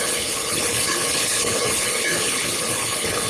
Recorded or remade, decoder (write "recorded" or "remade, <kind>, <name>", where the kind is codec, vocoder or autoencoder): remade, codec, HILCodec